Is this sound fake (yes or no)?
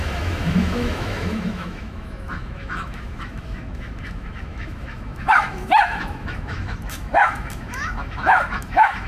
yes